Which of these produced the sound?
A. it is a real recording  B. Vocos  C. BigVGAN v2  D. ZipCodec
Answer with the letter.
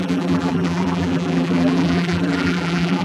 C